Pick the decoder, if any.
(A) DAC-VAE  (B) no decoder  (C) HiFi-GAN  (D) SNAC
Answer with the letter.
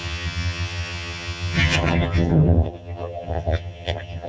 C